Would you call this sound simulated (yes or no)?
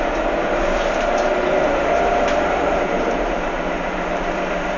yes